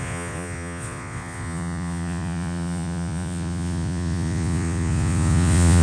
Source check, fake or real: fake